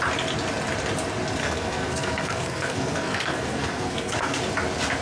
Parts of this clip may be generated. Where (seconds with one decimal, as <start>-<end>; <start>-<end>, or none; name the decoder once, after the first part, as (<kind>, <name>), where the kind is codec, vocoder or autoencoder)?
1.4-4.4 (codec, SNAC)